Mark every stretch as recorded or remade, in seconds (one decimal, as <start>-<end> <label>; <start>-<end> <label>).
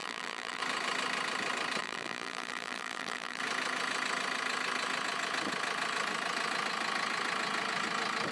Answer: 0.0-0.6 remade; 0.6-1.8 recorded; 1.8-3.4 remade; 3.4-8.3 recorded